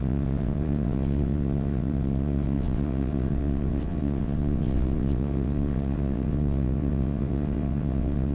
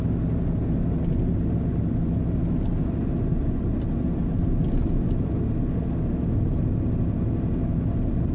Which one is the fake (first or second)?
first